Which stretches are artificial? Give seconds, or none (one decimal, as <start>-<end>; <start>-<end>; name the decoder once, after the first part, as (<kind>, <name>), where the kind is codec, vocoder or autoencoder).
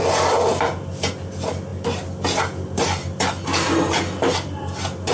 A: none